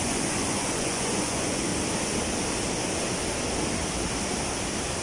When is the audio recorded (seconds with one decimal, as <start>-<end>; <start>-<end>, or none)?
1.7-5.0